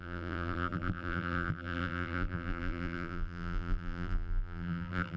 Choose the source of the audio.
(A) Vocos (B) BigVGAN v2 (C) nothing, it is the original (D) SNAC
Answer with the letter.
B